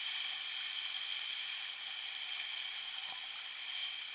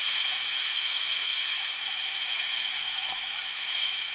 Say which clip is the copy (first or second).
second